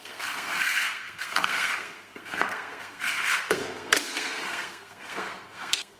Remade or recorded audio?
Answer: remade